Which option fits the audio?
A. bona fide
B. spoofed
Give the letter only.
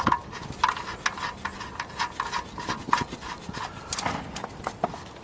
A